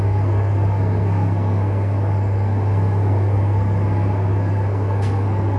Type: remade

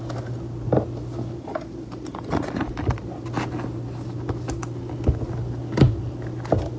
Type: recorded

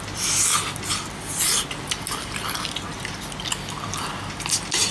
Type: recorded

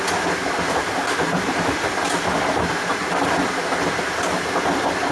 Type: recorded